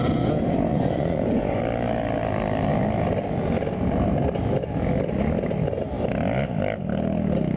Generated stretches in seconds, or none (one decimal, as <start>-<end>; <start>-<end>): 0.7-1.6